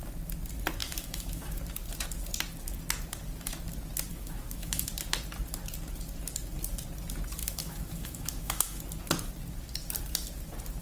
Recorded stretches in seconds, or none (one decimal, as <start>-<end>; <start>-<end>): 0.0-0.8; 1.6-4.1; 4.9-7.4; 8.8-10.8